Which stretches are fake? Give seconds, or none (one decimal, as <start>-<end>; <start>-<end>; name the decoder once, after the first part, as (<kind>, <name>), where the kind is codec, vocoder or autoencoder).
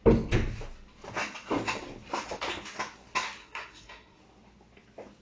3.4-4.2 (codec, SNAC)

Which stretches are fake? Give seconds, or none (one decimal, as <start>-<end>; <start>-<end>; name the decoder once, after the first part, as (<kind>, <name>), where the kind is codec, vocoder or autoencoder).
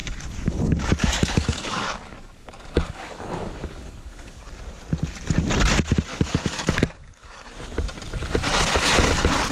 0.0-4.4 (codec, DAC); 6.1-7.5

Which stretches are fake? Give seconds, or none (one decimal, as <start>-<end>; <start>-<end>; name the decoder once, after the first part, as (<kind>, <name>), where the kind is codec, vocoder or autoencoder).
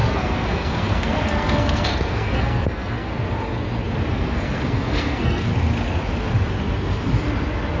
0.0-3.1 (codec, SNAC); 4.1-5.5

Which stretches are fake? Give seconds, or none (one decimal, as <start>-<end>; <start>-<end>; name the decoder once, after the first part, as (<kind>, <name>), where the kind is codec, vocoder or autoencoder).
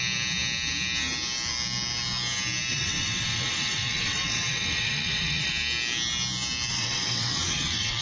2.7-5.5 (vocoder, WaveNeXt); 6.7-8.0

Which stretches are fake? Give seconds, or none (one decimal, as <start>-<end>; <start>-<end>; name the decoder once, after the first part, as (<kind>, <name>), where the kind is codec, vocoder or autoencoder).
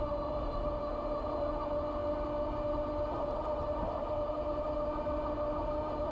none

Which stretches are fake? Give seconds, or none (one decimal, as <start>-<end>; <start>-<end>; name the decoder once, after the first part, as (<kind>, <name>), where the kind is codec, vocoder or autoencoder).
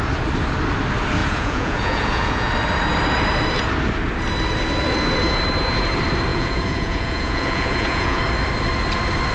1.2-2.5 (vocoder, Vocos); 6.3-8.2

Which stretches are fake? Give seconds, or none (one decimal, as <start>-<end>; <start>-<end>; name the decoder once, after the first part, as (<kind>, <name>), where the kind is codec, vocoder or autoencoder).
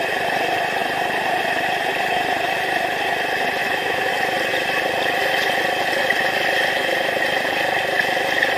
3.6-4.1 (autoencoder, DAC-VAE)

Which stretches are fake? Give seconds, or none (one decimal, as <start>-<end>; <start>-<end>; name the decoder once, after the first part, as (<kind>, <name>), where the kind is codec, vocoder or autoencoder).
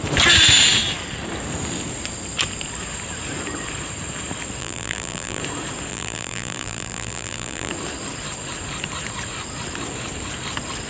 4.6-5.4 (vocoder, BigVGAN v2); 5.9-7.7